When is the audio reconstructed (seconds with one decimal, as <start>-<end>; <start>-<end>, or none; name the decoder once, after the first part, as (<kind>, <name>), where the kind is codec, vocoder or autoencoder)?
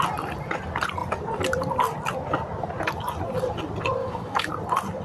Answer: 4.0-4.5 (autoencoder, DAC-VAE)